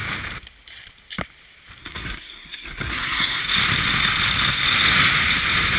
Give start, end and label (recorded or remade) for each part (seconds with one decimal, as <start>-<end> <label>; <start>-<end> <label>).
0.0-1.8 recorded; 1.8-3.4 remade; 3.4-5.8 recorded